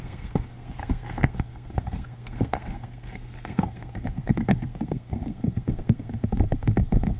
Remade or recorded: remade